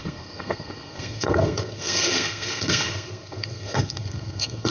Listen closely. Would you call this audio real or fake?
fake